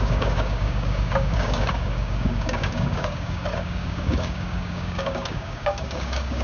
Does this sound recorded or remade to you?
remade